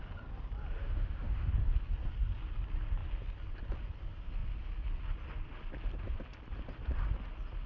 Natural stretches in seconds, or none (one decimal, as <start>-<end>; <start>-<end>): 0.0-0.8; 1.5-7.7